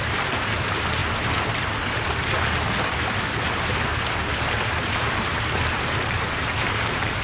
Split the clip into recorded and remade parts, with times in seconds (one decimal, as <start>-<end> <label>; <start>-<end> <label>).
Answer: 0.0-1.0 remade; 1.0-3.2 recorded; 3.2-3.9 remade; 3.9-4.4 recorded; 4.4-7.2 remade